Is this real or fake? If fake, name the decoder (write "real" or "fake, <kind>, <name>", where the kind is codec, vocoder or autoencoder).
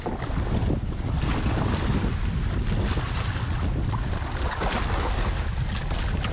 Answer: real